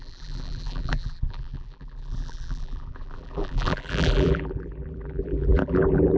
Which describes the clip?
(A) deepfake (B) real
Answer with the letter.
A